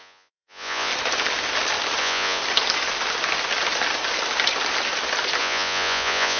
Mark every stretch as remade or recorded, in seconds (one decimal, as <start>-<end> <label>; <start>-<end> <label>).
0.0-0.9 remade; 0.9-2.0 recorded; 2.0-2.4 remade; 2.4-5.4 recorded; 5.4-6.4 remade